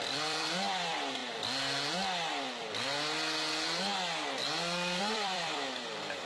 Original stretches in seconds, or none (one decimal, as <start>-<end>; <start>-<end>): 1.2-5.0